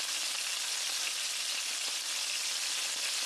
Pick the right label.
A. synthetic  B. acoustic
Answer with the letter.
B